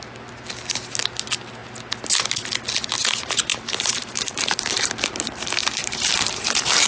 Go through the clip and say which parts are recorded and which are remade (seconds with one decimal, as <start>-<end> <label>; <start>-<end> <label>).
0.0-3.5 recorded; 3.5-4.9 remade; 4.9-5.8 recorded; 5.8-6.9 remade